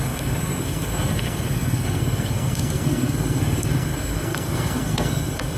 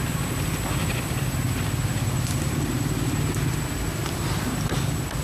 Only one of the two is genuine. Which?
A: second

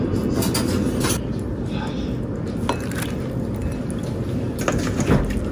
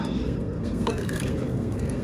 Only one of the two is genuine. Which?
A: first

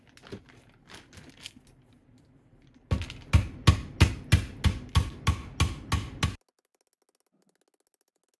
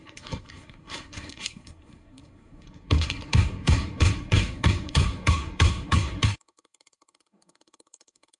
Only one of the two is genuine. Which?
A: first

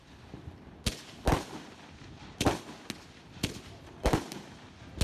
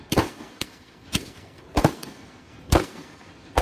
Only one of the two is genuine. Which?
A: first